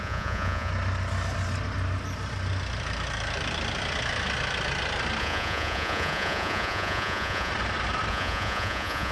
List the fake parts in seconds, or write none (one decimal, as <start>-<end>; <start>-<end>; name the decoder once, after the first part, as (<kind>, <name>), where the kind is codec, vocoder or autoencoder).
0.0-0.7 (vocoder, Vocos); 5.2-7.5; 8.1-9.1